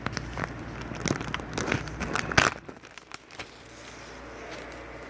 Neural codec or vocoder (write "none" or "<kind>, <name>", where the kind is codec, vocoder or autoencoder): none